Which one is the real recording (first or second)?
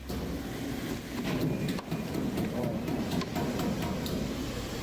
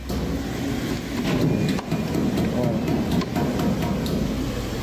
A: second